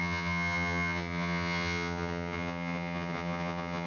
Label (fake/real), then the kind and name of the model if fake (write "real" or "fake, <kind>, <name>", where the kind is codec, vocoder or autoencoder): fake, vocoder, HiFi-GAN